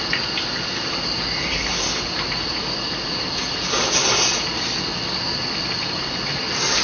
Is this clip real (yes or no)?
yes